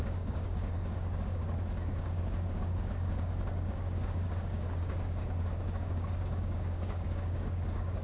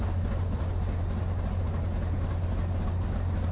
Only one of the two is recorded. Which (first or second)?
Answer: second